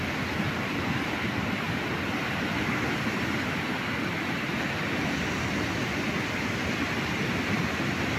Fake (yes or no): no